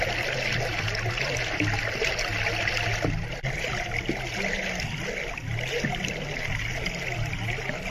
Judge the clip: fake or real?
real